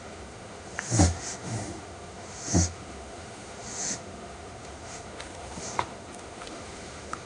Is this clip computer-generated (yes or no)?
yes